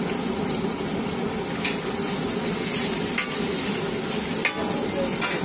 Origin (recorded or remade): recorded